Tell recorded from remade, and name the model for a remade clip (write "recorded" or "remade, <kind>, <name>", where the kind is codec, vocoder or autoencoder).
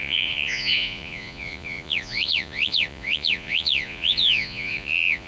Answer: remade, vocoder, Vocos